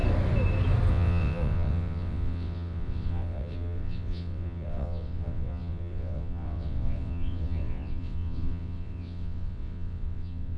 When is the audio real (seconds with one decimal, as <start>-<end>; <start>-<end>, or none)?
0.0-0.9